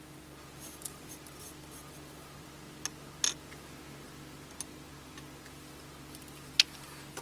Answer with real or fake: real